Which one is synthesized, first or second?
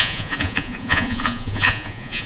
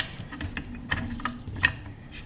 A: first